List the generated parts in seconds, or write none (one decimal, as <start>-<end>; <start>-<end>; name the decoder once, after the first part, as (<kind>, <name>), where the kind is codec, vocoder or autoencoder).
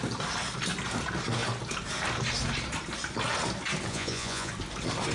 3.9-4.5 (vocoder, Vocos)